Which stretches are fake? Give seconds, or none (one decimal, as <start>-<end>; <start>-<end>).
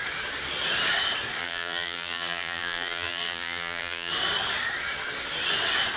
1.4-4.1